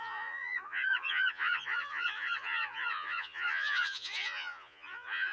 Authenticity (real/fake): fake